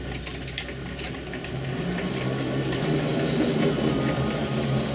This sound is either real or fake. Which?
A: real